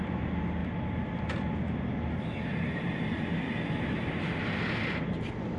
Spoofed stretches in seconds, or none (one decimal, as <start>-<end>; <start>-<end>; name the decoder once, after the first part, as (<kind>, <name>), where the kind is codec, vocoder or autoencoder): 0.6-1.3 (vocoder, BigVGAN v2); 2.5-4.3